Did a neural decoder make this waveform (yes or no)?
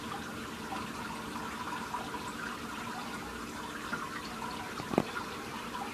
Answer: no